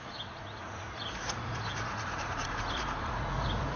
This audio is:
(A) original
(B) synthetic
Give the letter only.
B